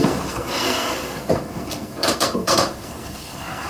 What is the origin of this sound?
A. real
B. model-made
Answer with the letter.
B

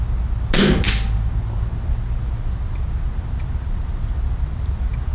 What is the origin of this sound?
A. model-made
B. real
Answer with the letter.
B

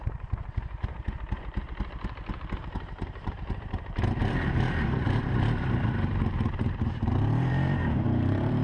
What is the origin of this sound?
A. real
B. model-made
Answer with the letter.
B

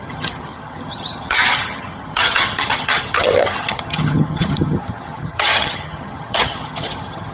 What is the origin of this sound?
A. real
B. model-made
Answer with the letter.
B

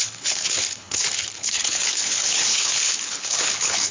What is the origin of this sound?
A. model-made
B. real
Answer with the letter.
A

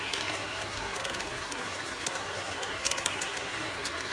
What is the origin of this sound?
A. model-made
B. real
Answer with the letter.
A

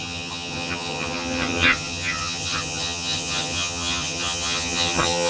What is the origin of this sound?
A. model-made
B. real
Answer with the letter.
A